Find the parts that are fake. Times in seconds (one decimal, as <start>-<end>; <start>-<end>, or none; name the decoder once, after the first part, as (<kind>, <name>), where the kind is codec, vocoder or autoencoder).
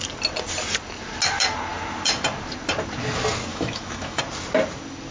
3.5-4.2 (autoencoder, DAC-VAE)